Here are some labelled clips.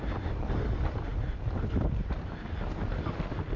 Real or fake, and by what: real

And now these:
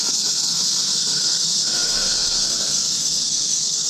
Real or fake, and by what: fake, codec, SNAC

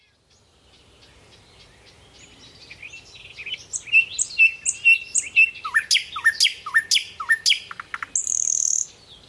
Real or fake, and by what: real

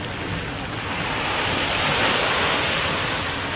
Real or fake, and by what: real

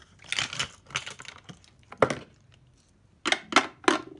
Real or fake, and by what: real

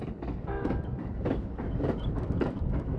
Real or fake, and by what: fake, codec, DAC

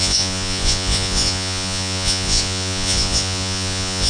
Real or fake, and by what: fake, vocoder, Vocos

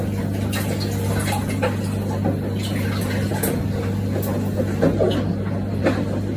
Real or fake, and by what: real